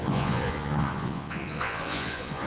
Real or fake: fake